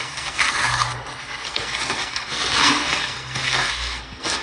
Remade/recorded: remade